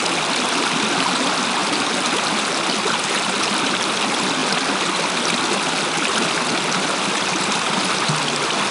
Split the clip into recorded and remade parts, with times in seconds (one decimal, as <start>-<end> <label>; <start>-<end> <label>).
0.0-8.7 recorded